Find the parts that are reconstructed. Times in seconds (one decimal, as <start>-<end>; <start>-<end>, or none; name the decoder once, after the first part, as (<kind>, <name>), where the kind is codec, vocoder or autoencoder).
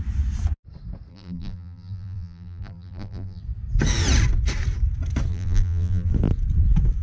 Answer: 1.1-3.4 (vocoder, BigVGAN v2); 5.3-6.1